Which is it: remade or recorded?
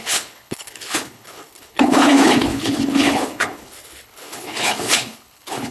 remade